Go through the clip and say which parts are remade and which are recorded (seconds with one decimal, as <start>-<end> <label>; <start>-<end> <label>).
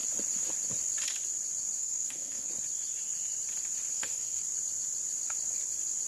0.0-1.8 recorded; 1.8-2.5 remade; 2.5-3.9 recorded; 3.9-4.4 remade; 4.4-6.1 recorded